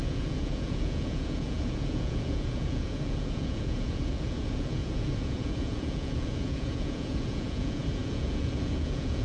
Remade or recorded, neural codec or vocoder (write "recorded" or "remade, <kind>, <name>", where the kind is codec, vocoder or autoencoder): remade, vocoder, Vocos